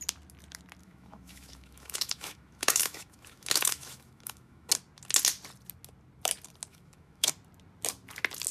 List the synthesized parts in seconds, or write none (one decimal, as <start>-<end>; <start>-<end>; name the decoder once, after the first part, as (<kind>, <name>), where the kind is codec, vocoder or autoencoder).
0.8-4.7 (autoencoder, DAC-VAE); 6.7-7.3